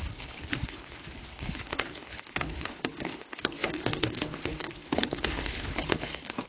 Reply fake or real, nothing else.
fake